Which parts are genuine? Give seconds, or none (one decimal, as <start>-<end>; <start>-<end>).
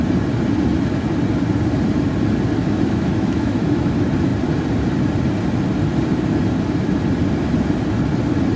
0.0-2.6; 3.9-8.6